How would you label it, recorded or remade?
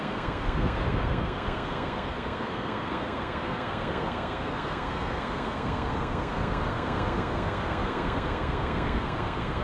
remade